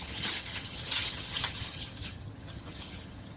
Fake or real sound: fake